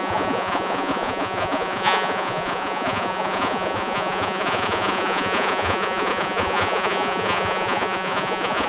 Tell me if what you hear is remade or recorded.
remade